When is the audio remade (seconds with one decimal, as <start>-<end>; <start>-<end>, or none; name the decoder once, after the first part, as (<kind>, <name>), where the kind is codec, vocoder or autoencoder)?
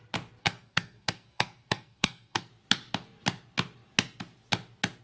0.4-2.5 (codec, SNAC)